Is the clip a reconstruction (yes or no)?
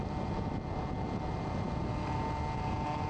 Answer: no